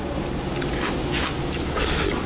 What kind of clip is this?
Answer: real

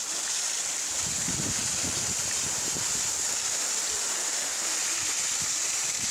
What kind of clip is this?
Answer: fake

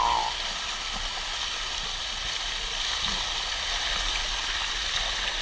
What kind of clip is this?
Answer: real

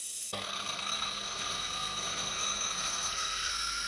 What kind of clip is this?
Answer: fake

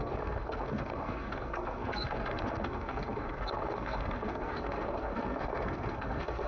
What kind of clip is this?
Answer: fake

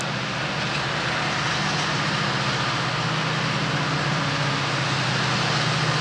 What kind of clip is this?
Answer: real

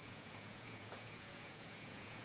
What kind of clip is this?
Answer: fake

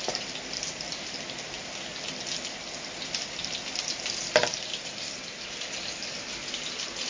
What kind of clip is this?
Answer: real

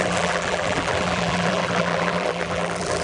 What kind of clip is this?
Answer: fake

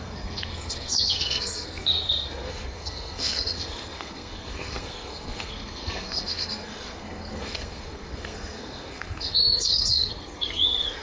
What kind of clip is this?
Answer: fake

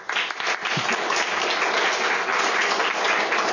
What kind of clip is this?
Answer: real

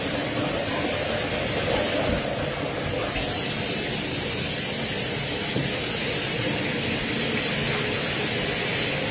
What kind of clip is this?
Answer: real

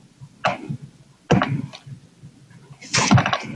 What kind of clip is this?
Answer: real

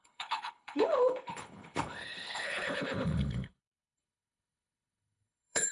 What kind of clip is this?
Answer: fake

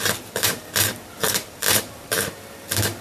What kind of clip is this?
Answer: fake